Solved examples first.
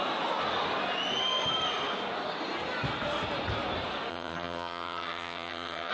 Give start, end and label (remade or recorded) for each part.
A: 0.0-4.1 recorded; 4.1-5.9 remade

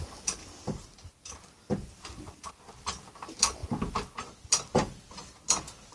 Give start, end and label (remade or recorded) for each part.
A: 0.0-5.9 recorded

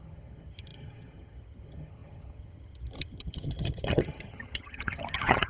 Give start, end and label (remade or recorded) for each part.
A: 0.0-5.5 remade

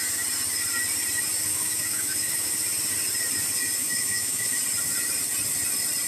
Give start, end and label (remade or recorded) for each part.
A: 0.0-1.5 recorded; 1.5-2.5 remade; 2.5-3.8 recorded; 3.8-4.6 remade; 4.6-6.1 recorded

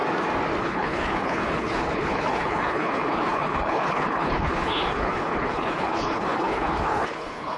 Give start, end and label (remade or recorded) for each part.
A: 0.0-0.6 recorded; 0.6-7.6 remade